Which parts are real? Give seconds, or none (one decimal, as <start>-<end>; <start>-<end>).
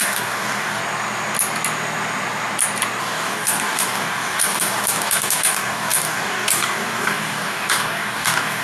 0.8-3.0